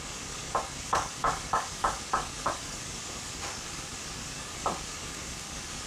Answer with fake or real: fake